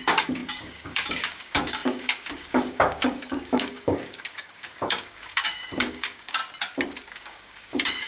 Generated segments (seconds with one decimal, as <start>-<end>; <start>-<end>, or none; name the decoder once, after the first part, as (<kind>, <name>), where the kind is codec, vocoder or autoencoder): 0.0-6.4 (codec, DAC); 7.1-8.1